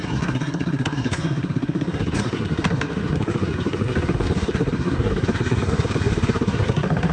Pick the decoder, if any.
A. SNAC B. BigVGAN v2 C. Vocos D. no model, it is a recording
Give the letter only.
A